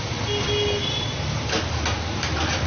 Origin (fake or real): real